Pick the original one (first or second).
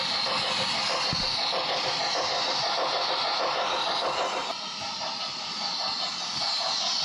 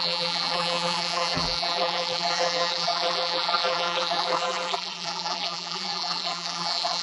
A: first